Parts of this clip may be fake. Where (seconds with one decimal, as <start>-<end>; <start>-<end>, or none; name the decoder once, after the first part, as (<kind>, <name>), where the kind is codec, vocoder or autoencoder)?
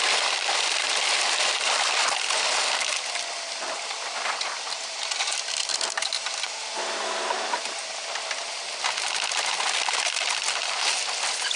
none